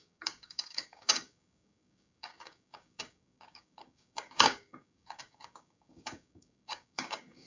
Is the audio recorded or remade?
remade